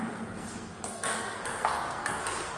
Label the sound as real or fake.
fake